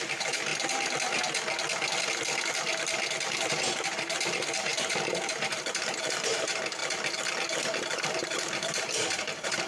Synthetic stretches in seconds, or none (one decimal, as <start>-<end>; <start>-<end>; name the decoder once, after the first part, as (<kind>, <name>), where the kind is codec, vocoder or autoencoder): 0.0-0.5 (vocoder, BigVGAN v2); 3.5-6.8; 7.6-9.7